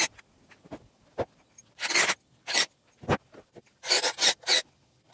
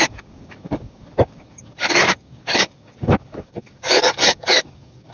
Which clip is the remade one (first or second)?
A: second